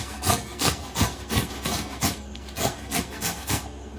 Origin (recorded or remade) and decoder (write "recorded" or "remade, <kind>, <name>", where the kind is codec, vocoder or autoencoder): remade, codec, SNAC